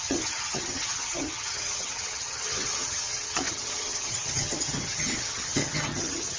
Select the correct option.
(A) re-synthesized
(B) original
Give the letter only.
A